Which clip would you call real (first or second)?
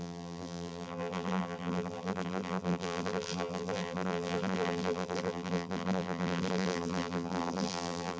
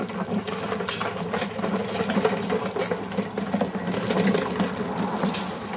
second